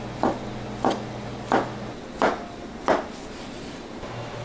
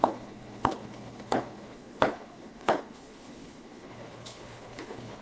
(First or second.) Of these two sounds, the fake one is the second